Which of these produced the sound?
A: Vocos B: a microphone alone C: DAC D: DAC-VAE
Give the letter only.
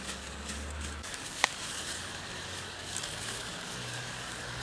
C